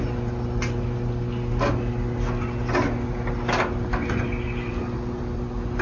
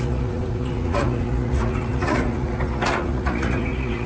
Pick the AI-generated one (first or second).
second